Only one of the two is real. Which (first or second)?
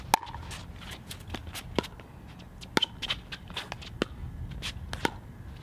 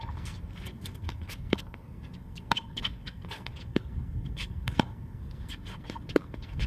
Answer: first